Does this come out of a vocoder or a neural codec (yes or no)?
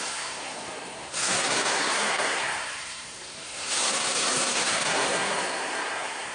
yes